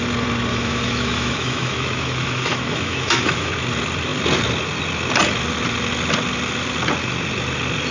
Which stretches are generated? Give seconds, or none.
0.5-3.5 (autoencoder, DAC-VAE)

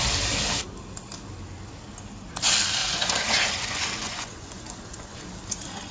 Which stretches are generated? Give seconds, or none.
2.8-5.3 (vocoder, Vocos)